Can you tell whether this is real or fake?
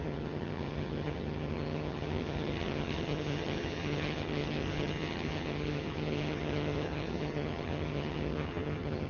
fake